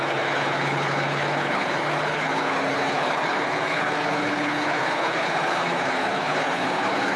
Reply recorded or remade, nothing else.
remade